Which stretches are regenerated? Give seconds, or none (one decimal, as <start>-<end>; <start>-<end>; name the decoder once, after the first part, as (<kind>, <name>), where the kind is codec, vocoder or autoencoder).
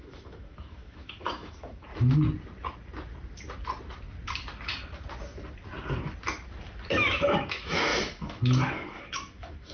0.0-1.9 (autoencoder, DAC-VAE); 6.9-9.7